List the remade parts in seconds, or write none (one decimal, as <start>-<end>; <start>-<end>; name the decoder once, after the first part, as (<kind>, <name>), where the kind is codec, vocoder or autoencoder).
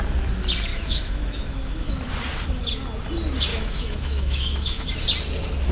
0.7-2.1 (autoencoder, DAC-VAE); 3.5-4.9